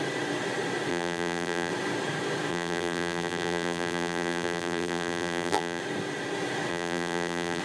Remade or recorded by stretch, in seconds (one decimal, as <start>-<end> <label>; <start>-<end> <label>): 0.0-0.9 recorded; 0.9-1.7 remade; 1.7-2.5 recorded; 2.5-5.8 remade; 5.8-6.7 recorded; 6.7-7.6 remade